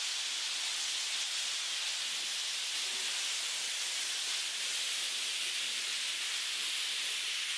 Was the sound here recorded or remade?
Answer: recorded